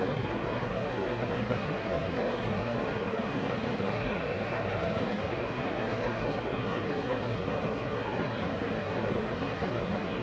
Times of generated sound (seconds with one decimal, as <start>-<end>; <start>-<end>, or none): 0.0-10.2